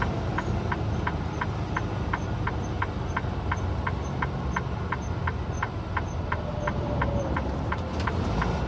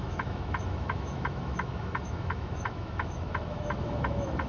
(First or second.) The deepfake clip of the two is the second